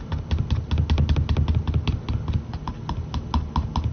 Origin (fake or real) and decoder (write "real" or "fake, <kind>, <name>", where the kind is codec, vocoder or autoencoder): real